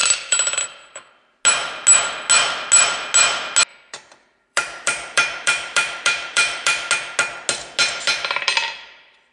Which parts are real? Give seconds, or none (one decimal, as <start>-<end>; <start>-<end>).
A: 1.1-3.7; 6.9-9.3